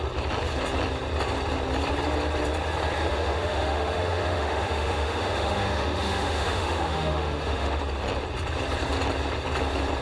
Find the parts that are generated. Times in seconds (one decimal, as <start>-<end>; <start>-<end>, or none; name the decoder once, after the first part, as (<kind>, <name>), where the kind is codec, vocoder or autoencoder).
3.1-7.8 (autoencoder, DAC-VAE)

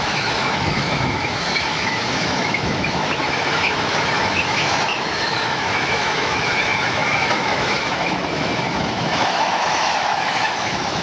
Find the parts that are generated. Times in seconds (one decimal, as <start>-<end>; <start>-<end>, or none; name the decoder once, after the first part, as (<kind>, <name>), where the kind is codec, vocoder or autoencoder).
0.0-11.0 (autoencoder, DAC-VAE)

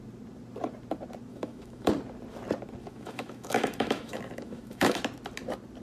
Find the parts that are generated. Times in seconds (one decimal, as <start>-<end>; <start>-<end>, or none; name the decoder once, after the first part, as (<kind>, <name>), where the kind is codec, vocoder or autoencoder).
1.3-1.9 (autoencoder, DAC-VAE); 2.8-5.0

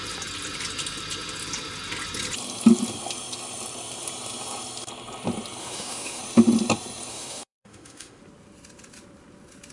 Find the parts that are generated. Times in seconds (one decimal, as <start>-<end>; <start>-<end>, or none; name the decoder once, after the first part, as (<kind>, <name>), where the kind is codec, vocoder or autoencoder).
5.6-6.2 (autoencoder, DAC-VAE); 7.1-8.2

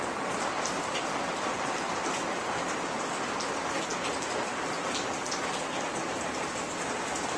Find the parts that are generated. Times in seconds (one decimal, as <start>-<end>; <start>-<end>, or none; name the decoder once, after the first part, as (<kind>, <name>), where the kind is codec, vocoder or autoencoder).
none

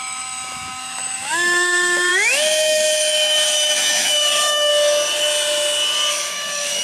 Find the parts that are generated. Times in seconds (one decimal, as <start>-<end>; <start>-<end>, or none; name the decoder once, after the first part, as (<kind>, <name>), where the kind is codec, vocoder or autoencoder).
0.0-4.7 (autoencoder, DAC-VAE); 6.1-6.8

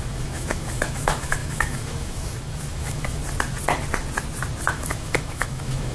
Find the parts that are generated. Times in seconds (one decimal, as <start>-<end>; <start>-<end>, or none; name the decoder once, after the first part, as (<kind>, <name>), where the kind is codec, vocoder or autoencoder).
0.0-3.2 (autoencoder, DAC-VAE); 4.7-5.9

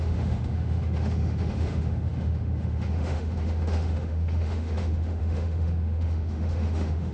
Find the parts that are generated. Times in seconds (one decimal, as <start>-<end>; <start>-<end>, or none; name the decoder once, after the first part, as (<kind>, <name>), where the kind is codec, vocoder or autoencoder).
0.0-7.1 (autoencoder, DAC-VAE)